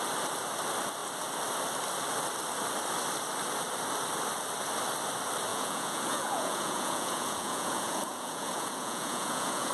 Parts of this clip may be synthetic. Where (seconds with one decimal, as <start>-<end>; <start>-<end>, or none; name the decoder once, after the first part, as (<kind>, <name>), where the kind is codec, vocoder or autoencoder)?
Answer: 5.5-9.7 (vocoder, Vocos)